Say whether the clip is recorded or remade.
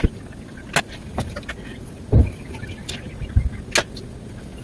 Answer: recorded